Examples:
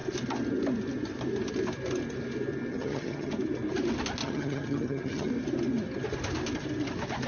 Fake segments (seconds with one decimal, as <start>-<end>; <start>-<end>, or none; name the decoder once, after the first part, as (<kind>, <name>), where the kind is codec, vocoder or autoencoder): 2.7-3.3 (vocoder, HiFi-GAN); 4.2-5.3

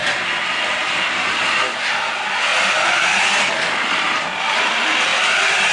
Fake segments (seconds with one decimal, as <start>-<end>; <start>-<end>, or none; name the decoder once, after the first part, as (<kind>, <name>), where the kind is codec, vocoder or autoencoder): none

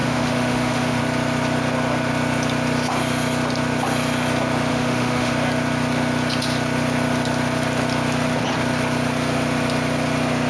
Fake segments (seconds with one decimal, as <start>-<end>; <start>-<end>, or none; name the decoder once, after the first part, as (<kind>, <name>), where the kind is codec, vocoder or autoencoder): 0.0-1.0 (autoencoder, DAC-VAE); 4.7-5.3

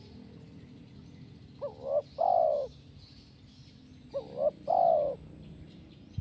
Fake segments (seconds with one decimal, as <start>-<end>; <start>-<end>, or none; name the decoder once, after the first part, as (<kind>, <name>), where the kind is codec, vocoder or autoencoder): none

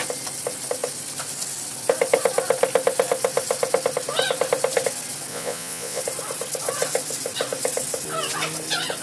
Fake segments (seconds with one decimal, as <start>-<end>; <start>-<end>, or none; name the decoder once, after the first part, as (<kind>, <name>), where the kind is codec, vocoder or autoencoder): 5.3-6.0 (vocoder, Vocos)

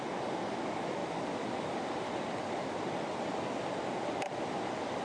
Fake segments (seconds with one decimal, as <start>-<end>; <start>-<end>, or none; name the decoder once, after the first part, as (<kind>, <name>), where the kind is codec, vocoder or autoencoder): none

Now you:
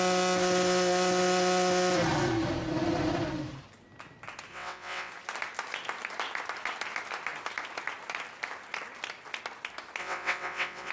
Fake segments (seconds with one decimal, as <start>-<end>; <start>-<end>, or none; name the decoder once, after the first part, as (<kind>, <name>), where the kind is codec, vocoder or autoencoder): 4.5-5.1 (vocoder, WaveNeXt); 10.0-10.9